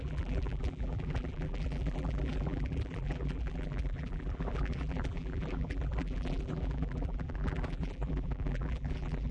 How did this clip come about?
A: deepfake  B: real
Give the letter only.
A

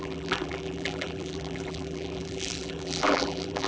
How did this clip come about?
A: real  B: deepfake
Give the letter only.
B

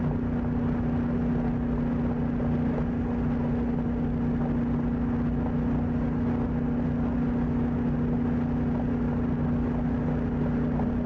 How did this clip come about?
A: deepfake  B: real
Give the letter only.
B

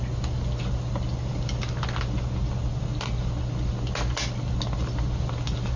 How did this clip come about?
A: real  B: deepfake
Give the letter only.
A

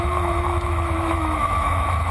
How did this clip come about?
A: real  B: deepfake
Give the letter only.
B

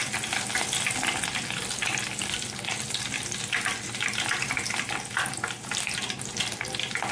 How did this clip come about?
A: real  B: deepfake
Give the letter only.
A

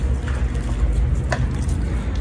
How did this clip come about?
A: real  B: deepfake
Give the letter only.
A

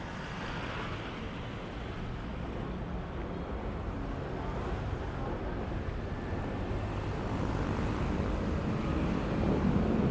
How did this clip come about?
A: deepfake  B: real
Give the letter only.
B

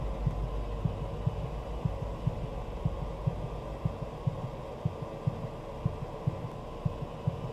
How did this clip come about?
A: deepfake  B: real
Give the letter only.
B